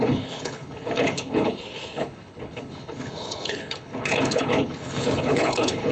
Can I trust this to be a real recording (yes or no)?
no